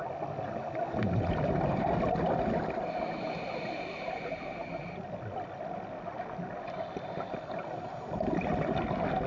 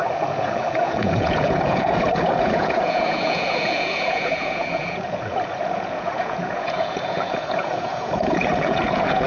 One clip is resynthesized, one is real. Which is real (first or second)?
first